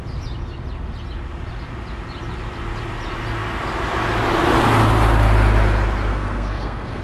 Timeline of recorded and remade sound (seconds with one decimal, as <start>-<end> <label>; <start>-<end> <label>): 0.0-6.1 recorded; 6.1-7.0 remade